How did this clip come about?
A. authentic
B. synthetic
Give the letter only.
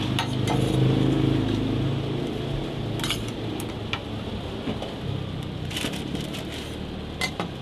A